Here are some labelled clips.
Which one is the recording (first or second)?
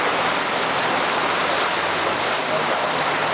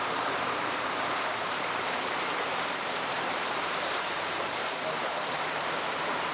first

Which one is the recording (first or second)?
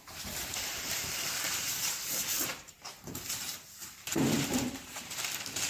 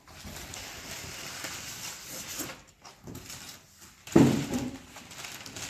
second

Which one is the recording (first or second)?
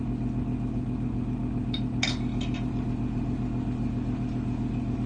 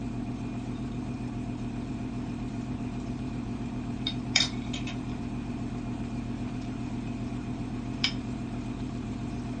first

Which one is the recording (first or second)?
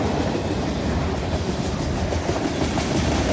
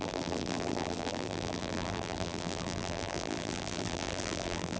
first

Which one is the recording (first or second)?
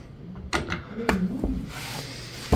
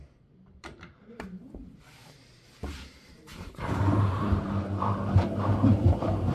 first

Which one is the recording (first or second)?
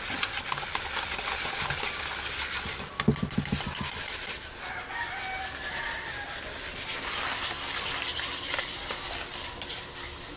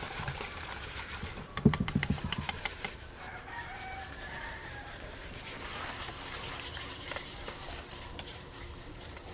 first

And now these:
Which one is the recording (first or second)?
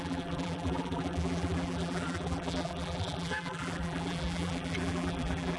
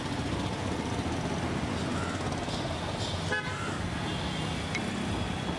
second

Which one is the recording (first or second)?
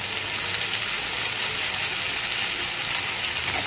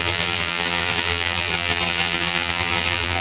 first